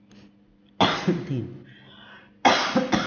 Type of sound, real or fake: real